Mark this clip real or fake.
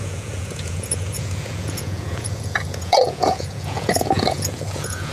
fake